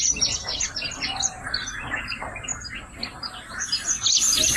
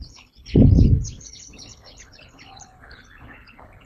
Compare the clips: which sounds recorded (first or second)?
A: first